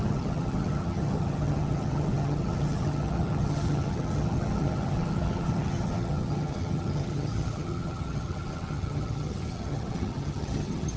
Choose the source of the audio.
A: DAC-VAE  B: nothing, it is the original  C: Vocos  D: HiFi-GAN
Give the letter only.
D